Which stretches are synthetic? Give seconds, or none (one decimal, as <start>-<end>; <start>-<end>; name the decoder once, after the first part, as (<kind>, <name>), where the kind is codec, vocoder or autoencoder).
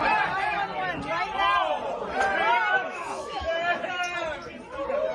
2.7-4.0 (autoencoder, DAC-VAE)